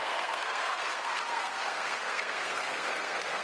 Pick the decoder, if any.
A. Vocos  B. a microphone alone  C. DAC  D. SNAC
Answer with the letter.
D